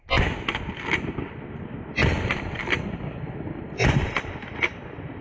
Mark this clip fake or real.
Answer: real